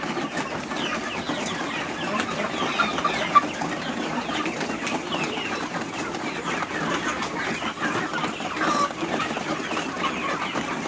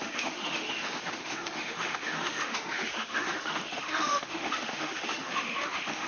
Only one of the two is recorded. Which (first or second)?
first